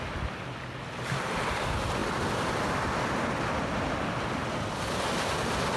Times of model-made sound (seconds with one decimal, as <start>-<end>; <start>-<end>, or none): none